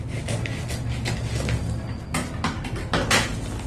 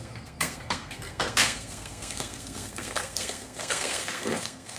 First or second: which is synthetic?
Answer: second